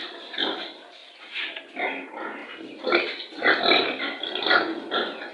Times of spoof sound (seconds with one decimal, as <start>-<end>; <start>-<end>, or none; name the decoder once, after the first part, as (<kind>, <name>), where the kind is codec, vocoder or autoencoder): 1.0-1.7 (vocoder, BigVGAN v2)